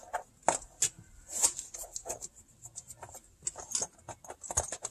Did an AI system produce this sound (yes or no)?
no